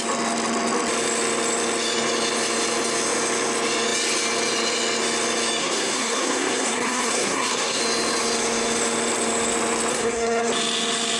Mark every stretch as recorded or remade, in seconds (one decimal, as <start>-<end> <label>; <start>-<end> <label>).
0.0-5.6 recorded; 5.6-7.8 remade; 7.8-9.9 recorded; 9.9-10.5 remade; 10.5-11.2 recorded